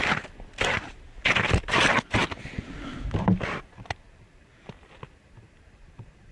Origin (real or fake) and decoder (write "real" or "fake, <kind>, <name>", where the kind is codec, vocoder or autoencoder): real